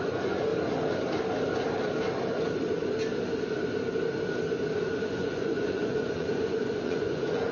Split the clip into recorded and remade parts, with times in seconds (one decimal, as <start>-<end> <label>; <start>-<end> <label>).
0.0-0.5 remade; 0.5-5.0 recorded; 5.0-7.5 remade